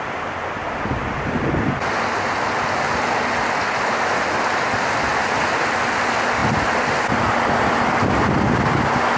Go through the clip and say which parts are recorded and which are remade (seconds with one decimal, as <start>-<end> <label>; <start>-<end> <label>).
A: 0.0-9.2 recorded